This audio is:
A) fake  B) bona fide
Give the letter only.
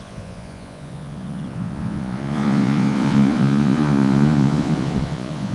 A